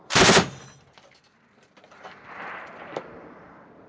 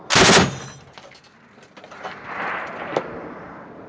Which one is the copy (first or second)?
first